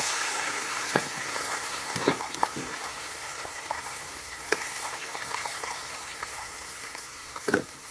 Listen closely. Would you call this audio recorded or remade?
remade